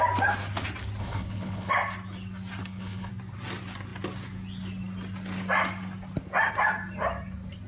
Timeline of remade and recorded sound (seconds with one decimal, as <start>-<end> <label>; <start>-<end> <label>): 0.0-1.0 recorded; 1.0-1.7 remade; 1.7-2.6 recorded; 2.6-3.1 remade; 3.1-7.7 recorded